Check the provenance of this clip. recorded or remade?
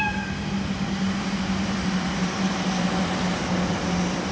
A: recorded